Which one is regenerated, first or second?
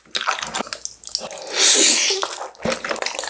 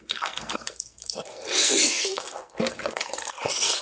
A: second